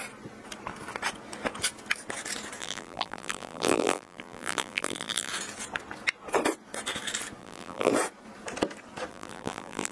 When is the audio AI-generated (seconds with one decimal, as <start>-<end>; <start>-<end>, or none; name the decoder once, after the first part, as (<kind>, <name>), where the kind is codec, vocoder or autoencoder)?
2.6-5.3 (vocoder, BigVGAN v2); 7.4-7.9; 9.1-9.9